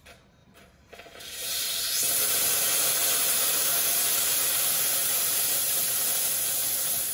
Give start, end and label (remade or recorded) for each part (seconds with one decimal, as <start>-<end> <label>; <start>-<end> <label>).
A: 0.0-0.4 recorded; 0.4-2.1 remade; 2.1-5.0 recorded; 5.0-5.9 remade; 5.9-7.1 recorded